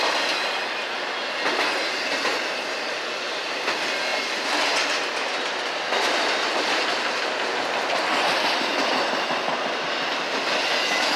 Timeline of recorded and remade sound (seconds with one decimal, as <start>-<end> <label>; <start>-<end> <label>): 0.0-11.2 recorded